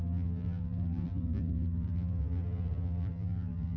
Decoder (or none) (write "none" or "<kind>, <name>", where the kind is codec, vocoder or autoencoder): vocoder, BigVGAN v2